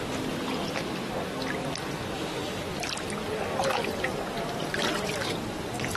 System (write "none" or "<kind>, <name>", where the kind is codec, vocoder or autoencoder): none